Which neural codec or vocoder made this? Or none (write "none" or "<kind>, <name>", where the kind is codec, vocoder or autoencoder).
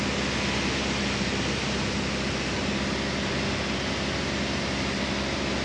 none